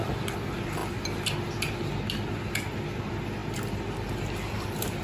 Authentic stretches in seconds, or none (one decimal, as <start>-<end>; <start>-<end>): 0.0-5.0